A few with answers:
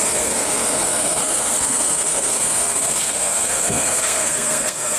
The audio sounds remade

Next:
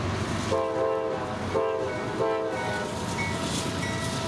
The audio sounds recorded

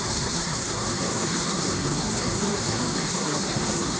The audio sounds remade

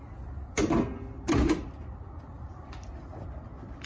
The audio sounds recorded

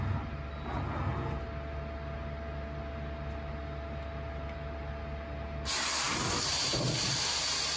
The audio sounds recorded